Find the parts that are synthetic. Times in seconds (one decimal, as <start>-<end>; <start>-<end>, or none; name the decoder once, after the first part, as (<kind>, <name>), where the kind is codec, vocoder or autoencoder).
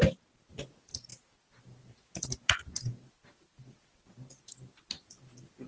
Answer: none